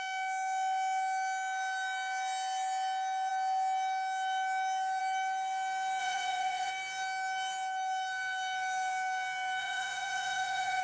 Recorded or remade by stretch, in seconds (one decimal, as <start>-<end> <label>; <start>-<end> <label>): 0.0-6.0 recorded; 6.0-6.7 remade; 6.7-9.6 recorded; 9.6-10.8 remade